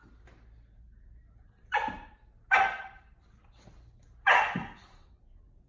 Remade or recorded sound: recorded